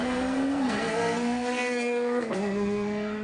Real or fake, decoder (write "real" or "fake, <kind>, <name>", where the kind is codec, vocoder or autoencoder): fake, codec, SNAC